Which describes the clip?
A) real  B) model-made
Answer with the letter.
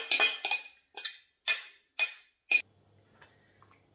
A